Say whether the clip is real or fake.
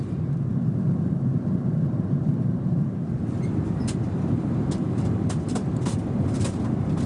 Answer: real